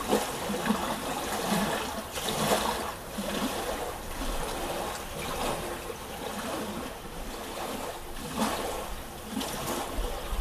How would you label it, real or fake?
real